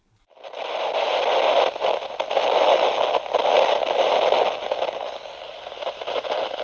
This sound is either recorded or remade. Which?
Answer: recorded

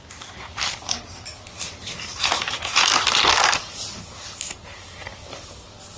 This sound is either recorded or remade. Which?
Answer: recorded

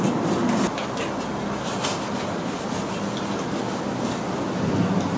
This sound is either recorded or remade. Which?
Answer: recorded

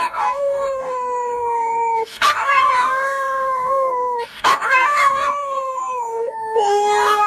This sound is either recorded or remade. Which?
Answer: remade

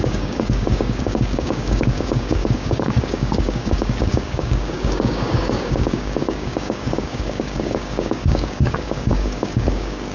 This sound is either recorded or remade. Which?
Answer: remade